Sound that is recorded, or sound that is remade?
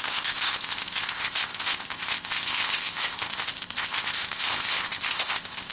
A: remade